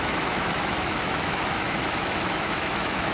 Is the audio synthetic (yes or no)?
yes